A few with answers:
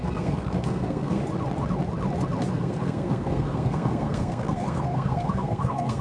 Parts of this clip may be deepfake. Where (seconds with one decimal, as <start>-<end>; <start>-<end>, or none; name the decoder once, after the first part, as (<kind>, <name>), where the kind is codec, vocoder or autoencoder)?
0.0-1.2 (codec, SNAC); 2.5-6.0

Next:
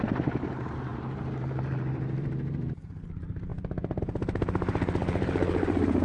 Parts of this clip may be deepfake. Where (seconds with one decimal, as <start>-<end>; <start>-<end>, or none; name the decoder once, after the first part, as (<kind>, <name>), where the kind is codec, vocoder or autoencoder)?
0.0-3.5 (vocoder, BigVGAN v2); 4.0-6.0

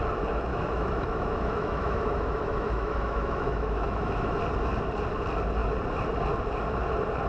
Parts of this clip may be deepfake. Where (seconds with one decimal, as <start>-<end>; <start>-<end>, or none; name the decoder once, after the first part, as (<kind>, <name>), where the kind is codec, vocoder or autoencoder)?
0.5-4.4 (autoencoder, DAC-VAE)

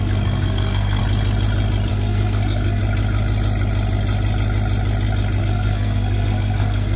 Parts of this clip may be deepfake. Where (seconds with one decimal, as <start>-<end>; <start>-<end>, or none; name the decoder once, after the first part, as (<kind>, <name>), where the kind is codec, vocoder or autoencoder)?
0.0-1.0 (codec, SNAC); 1.9-2.8; 5.4-7.0

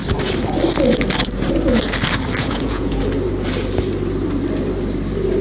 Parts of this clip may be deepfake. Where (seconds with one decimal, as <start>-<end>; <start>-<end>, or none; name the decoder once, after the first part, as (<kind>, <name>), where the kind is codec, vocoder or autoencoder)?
2.4-3.0 (vocoder, Vocos)

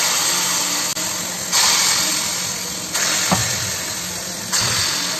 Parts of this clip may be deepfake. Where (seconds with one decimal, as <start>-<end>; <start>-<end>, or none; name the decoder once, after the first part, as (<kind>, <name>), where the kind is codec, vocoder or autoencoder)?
none